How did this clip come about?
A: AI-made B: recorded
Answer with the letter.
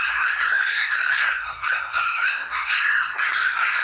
A